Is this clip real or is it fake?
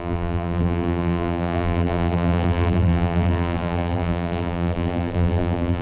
fake